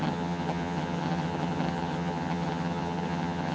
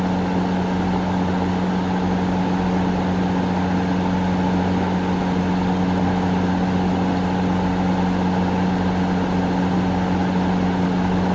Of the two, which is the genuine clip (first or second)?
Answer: second